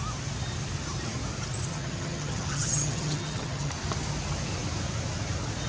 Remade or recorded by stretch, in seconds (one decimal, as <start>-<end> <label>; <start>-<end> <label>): 0.0-1.7 recorded; 1.7-3.7 remade; 3.7-5.7 recorded